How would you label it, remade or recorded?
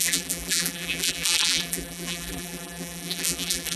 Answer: remade